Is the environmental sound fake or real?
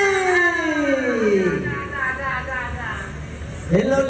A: real